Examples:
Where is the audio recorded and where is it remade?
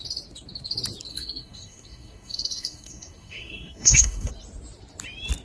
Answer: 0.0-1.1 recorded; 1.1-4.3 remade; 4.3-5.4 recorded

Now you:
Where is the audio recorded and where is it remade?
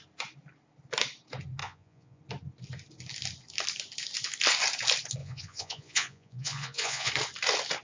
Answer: 0.0-1.6 recorded; 1.6-2.2 remade; 2.2-5.2 recorded; 5.2-7.1 remade; 7.1-7.8 recorded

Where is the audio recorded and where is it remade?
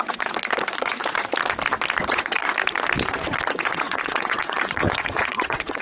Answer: 0.0-1.3 remade; 1.3-2.0 recorded; 2.0-2.5 remade; 2.5-3.1 recorded; 3.1-5.8 remade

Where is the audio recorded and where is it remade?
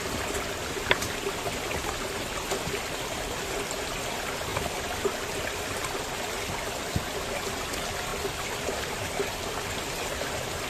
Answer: 0.0-1.8 recorded; 1.8-3.8 remade; 3.8-10.7 recorded